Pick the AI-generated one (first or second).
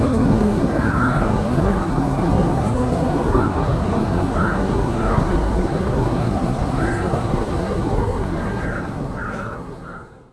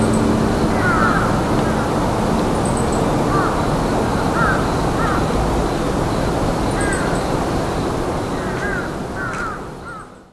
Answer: first